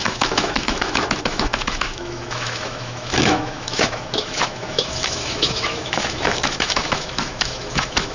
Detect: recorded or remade remade